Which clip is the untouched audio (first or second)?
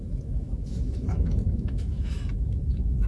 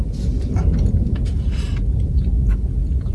second